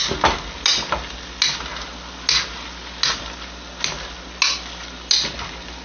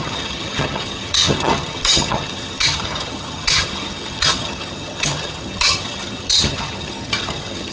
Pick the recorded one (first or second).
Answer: first